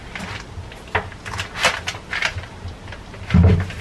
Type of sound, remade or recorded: recorded